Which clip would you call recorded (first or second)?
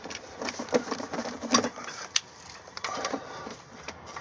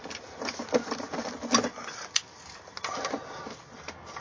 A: second